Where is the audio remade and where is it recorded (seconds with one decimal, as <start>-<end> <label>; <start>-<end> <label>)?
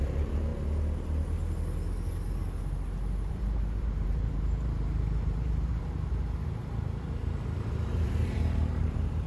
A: 0.0-0.5 remade; 0.5-3.3 recorded; 3.3-9.3 remade